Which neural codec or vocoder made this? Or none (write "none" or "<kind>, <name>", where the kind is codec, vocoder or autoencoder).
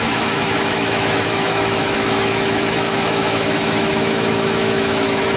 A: autoencoder, DAC-VAE